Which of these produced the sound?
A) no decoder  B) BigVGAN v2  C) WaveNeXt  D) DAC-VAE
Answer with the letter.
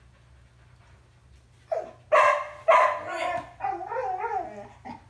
A